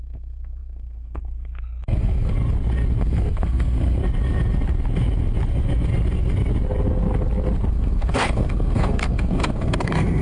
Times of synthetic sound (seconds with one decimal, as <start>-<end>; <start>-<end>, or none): 0.0-2.3; 3.0-4.0; 7.7-10.2